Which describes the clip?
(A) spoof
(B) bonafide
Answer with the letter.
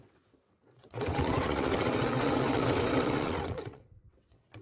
A